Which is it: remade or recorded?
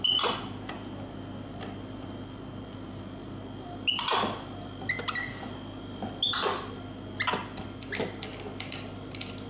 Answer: recorded